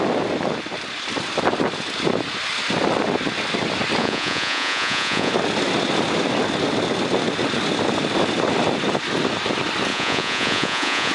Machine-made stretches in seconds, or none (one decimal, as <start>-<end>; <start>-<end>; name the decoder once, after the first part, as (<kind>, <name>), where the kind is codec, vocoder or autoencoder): 4.0-5.3 (vocoder, Vocos); 9.9-11.1